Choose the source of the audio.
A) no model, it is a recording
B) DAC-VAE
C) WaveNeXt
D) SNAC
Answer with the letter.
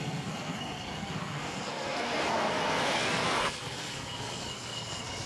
D